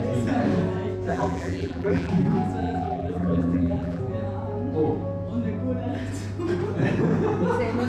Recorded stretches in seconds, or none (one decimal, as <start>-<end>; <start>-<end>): 0.0-1.1; 2.1-2.6; 4.0-7.9